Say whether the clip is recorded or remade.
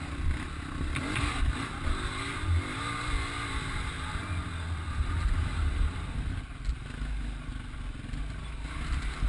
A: recorded